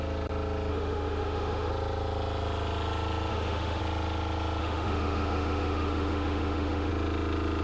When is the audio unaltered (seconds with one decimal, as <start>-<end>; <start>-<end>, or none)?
0.0-0.7; 1.7-3.3; 3.8-4.6; 6.9-7.6